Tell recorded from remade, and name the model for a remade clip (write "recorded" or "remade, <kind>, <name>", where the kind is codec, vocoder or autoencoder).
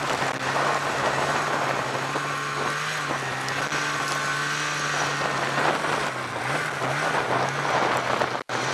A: recorded